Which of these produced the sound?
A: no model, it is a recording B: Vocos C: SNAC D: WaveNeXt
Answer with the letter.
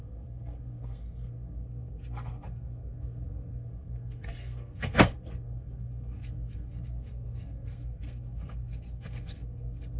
C